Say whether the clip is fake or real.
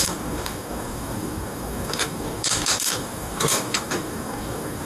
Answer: fake